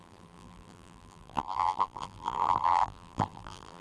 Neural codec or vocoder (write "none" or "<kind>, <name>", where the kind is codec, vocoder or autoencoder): vocoder, BigVGAN v2